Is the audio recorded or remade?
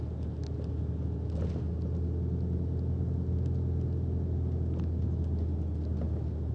recorded